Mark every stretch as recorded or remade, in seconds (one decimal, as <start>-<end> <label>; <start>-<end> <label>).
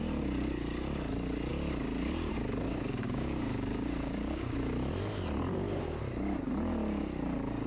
0.0-2.7 recorded; 2.7-4.7 remade; 4.7-7.7 recorded